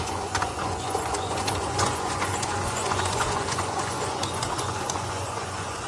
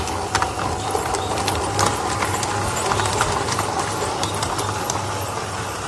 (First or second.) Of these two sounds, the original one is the second